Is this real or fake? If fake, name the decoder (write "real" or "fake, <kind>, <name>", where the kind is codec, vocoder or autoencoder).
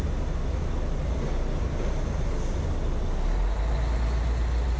real